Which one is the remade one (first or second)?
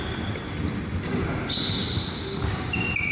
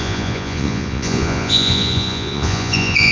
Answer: second